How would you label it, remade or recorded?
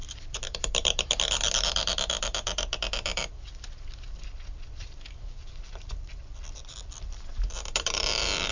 remade